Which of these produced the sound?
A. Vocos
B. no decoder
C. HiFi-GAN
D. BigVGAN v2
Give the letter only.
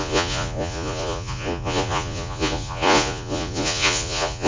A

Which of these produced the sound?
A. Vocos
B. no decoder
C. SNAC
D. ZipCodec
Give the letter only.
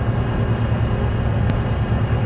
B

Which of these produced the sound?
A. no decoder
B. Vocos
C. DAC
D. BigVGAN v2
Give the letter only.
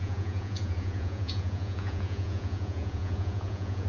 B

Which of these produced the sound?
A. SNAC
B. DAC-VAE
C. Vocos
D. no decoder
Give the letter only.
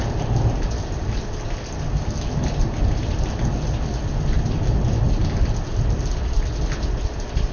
D